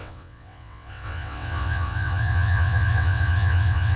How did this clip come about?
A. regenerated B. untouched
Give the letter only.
A